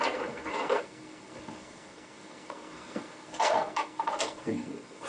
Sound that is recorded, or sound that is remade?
remade